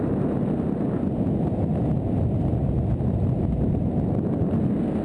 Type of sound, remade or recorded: recorded